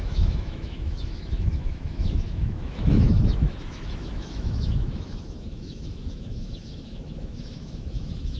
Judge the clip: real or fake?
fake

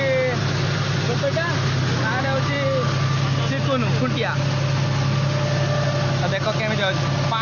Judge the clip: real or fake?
real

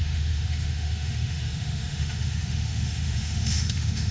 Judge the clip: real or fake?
fake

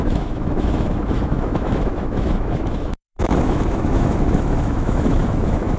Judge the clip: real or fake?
fake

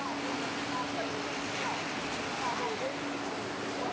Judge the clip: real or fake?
real